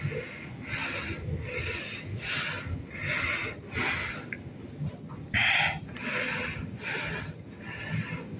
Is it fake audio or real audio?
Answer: real